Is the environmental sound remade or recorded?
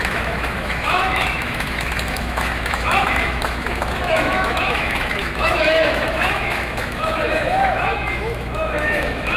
remade